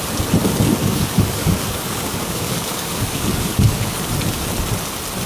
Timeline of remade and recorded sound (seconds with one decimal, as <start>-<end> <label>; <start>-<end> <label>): 0.0-0.8 recorded; 0.8-4.0 remade; 4.0-5.3 recorded